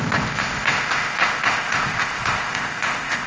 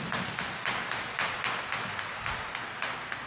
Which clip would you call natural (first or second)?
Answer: second